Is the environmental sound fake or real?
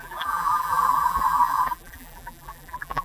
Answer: fake